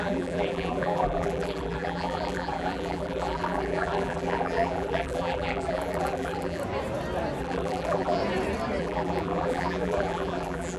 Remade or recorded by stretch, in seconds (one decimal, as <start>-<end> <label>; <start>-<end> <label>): 0.0-6.6 remade; 6.6-7.4 recorded; 7.4-8.2 remade; 8.2-8.8 recorded; 8.8-10.8 remade